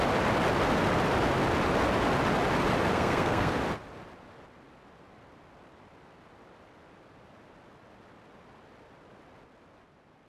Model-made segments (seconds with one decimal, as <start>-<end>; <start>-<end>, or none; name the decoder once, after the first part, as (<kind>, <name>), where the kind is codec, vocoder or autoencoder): 2.9-3.5 (codec, SNAC)